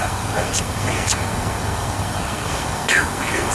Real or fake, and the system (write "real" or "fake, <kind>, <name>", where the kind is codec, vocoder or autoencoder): fake, codec, SNAC